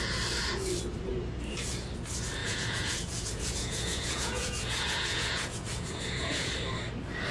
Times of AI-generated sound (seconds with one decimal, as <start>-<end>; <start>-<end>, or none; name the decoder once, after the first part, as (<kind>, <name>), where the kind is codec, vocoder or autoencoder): 2.4-6.5 (vocoder, Vocos)